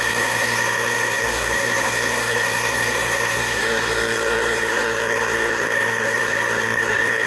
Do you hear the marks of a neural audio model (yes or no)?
yes